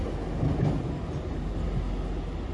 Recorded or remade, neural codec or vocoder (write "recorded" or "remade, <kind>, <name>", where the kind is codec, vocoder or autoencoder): recorded